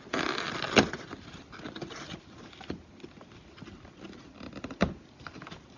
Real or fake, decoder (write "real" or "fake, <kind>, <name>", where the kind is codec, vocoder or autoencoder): real